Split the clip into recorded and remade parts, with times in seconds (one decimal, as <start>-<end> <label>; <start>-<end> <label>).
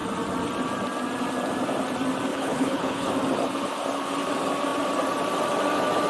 0.0-2.3 recorded; 2.3-3.1 remade; 3.1-6.1 recorded